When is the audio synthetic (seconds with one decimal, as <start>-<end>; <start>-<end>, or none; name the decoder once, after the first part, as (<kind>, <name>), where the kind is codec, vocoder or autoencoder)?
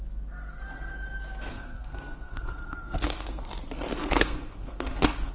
1.5-3.5 (codec, SNAC); 4.0-5.3